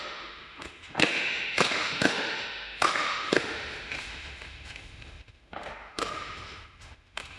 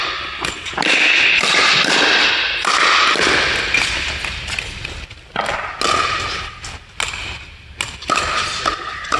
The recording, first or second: second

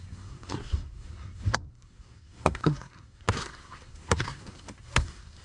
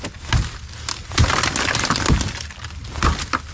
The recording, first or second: second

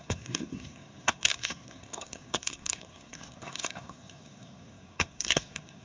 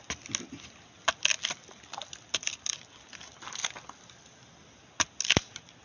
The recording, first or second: second